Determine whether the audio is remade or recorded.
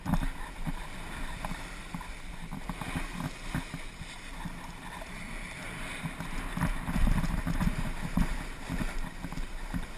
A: recorded